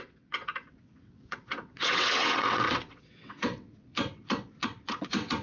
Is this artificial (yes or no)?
yes